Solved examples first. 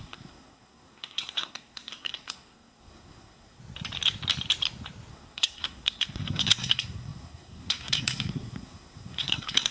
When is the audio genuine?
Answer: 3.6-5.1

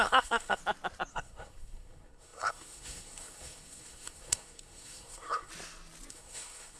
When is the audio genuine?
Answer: 0.6-1.1; 5.5-6.1

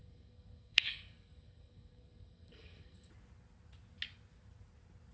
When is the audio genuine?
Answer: 3.1-5.1

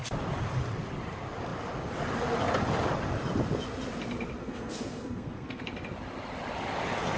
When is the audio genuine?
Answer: 0.0-4.4; 5.6-7.2

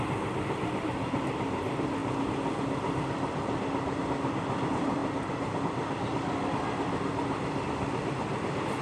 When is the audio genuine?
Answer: 0.0-8.8

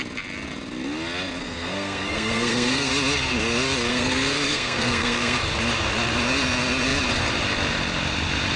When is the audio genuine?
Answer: 0.0-1.4; 2.9-3.9; 5.4-8.6

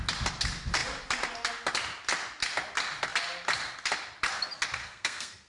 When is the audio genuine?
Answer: 0.0-4.8